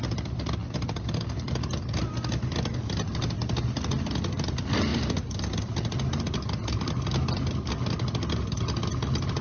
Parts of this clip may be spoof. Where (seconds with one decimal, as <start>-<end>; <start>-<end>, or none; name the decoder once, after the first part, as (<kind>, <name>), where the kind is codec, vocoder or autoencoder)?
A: none